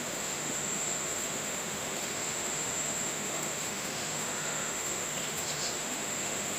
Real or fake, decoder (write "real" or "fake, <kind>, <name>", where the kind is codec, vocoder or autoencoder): fake, autoencoder, DAC-VAE